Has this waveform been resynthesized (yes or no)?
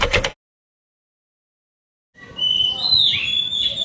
no